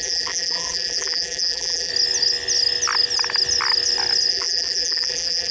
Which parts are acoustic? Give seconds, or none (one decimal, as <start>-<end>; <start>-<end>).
1.9-4.3

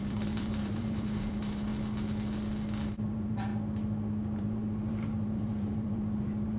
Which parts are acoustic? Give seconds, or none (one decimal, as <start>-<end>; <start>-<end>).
1.7-2.9; 3.5-4.4

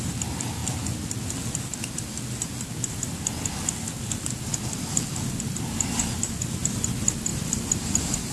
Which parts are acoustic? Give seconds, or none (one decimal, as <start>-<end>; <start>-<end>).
0.6-5.4; 6.0-6.6

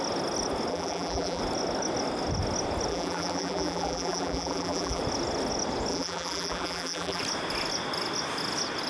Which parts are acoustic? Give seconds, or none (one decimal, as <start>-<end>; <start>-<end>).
0.0-0.7; 1.4-2.9; 5.0-5.9; 7.2-8.9

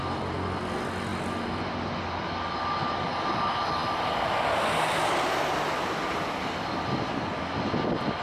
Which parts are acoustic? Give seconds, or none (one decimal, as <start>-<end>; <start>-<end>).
0.0-8.2

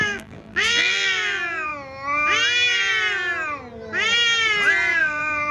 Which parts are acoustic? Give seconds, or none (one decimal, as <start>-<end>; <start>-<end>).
1.7-5.0

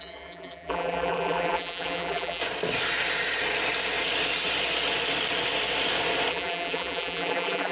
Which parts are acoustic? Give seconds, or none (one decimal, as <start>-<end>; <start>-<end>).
2.4-6.3

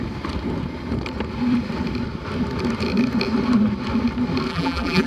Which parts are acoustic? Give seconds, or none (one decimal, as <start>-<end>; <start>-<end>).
0.0-4.5